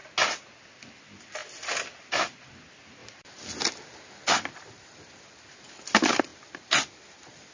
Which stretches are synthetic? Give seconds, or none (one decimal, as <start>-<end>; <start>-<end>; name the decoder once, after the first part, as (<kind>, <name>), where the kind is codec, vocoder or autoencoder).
0.8-1.4 (vocoder, BigVGAN v2); 2.0-3.0; 4.3-7.5